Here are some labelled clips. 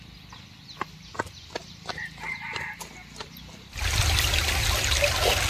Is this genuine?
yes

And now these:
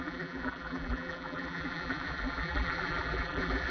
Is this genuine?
no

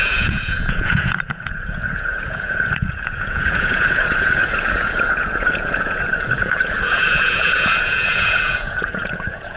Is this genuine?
no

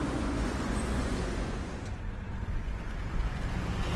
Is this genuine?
no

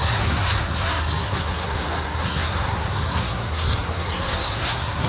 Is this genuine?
no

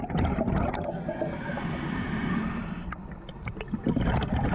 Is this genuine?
yes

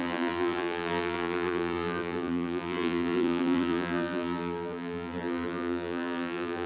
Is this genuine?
no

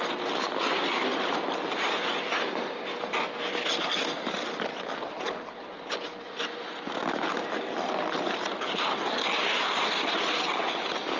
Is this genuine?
yes